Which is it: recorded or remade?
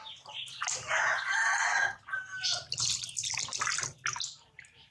recorded